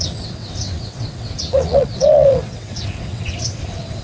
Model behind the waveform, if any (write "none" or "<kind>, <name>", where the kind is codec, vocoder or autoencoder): vocoder, WaveNeXt